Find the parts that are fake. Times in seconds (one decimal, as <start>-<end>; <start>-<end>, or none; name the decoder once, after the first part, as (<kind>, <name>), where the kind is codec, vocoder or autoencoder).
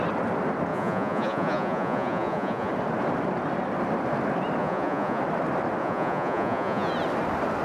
0.7-2.7 (vocoder, Vocos); 4.6-5.2; 5.8-6.9